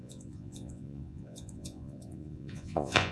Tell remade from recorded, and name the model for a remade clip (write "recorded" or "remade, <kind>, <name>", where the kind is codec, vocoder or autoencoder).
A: remade, vocoder, Vocos